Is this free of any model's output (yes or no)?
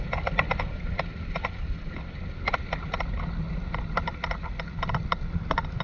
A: yes